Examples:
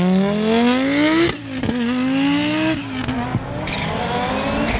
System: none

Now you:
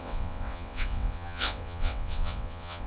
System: vocoder, WaveNeXt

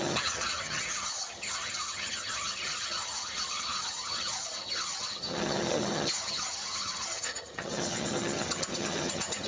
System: vocoder, HiFi-GAN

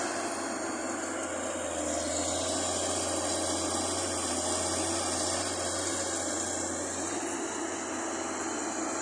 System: none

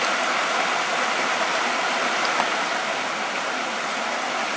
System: none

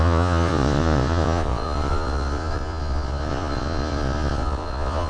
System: vocoder, Vocos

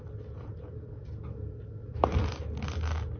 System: none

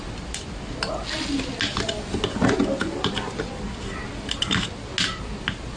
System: none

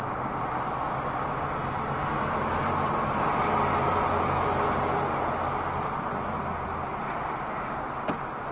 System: none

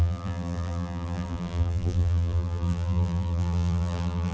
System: vocoder, BigVGAN v2